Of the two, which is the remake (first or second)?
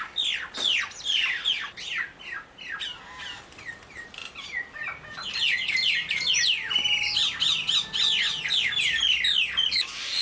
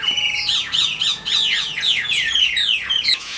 second